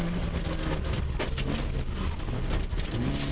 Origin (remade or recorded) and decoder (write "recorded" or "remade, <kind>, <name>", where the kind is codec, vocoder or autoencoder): recorded